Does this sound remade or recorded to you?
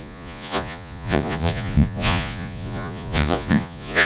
remade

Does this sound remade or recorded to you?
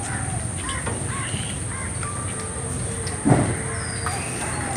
recorded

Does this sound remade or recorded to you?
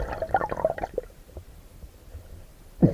recorded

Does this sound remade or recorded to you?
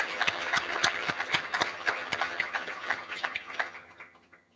remade